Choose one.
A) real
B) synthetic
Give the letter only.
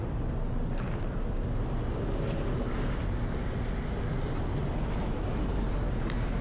A